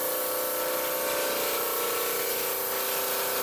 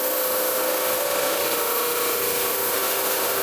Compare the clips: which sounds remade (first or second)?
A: second